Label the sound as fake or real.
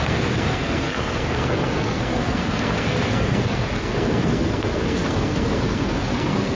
fake